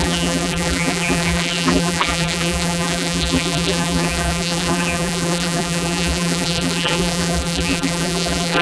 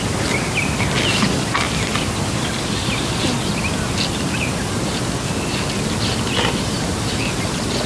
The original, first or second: second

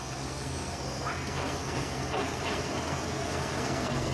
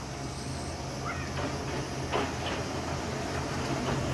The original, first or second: second